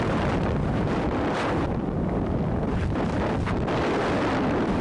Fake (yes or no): yes